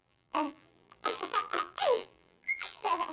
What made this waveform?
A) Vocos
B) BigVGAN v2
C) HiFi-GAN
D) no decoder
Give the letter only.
B